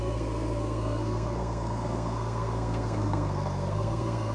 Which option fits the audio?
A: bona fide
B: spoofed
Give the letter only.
B